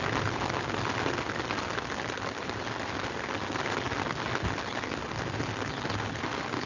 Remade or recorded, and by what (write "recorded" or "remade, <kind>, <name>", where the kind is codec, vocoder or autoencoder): recorded